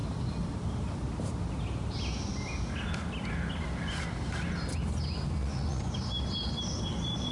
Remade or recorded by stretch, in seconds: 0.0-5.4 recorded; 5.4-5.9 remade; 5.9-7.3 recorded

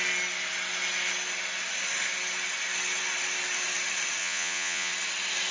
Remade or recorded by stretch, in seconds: 0.0-4.2 recorded; 4.2-4.9 remade; 4.9-5.5 recorded

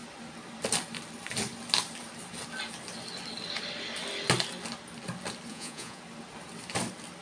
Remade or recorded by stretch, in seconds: 0.0-5.5 recorded; 5.5-6.0 remade; 6.0-7.2 recorded

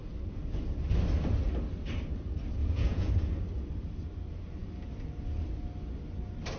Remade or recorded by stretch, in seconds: 0.0-2.6 recorded; 2.6-3.1 remade; 3.1-6.6 recorded

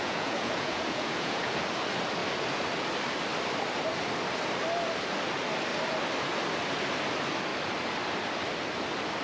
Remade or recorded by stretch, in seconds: 0.0-1.6 remade; 1.6-9.2 recorded

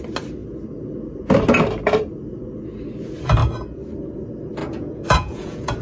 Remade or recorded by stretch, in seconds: 0.0-4.6 recorded; 4.6-5.8 remade

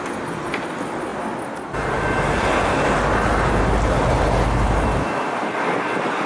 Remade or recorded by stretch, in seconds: 0.0-6.3 recorded